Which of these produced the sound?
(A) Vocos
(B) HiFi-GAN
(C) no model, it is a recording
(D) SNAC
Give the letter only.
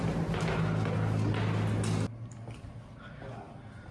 C